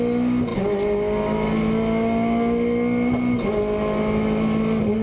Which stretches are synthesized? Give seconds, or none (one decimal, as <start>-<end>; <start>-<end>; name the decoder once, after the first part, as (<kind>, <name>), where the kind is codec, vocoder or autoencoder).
none